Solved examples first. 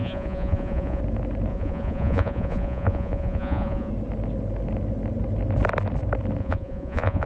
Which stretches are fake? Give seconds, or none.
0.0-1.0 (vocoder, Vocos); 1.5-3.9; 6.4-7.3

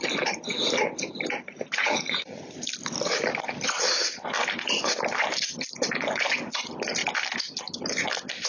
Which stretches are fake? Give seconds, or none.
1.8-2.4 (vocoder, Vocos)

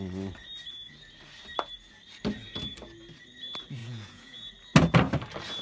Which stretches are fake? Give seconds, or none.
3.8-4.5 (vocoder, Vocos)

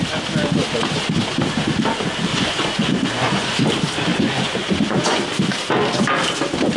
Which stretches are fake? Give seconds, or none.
2.3-3.6 (vocoder, Vocos); 4.1-5.2

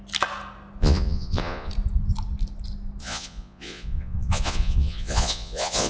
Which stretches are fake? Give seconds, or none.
0.8-1.7 (vocoder, Vocos); 3.0-5.9